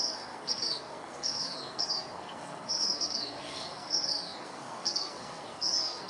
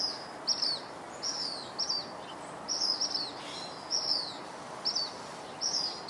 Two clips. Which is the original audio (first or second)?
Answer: second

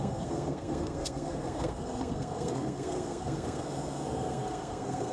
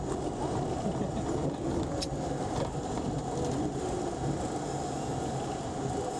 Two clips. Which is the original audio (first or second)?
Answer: second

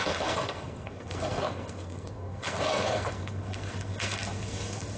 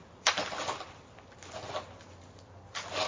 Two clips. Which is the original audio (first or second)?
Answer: second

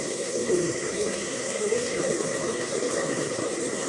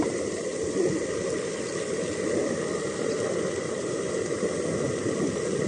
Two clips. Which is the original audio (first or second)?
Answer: second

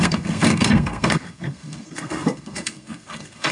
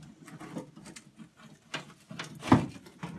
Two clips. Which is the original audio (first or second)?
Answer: second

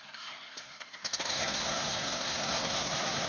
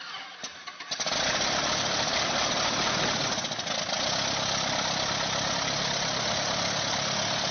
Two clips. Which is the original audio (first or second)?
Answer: second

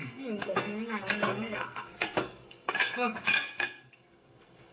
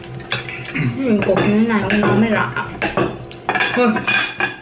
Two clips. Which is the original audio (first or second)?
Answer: second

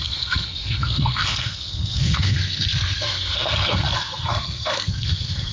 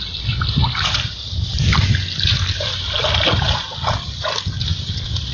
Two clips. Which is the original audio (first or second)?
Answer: second